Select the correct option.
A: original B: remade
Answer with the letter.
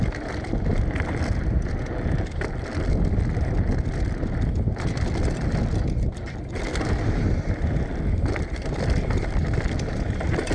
A